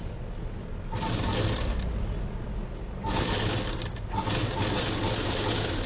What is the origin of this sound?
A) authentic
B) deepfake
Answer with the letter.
A